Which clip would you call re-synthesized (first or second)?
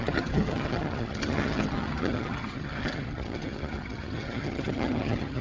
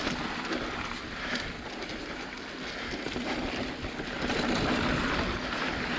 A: first